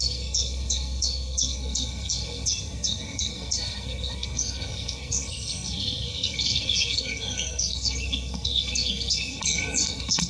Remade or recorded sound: remade